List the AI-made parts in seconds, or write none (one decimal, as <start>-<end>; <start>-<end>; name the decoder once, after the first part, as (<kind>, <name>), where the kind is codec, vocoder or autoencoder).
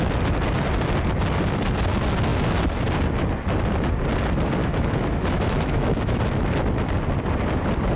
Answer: 4.6-6.2 (autoencoder, DAC-VAE)